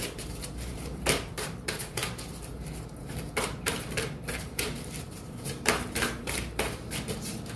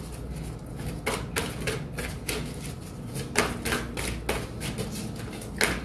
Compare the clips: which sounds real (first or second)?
second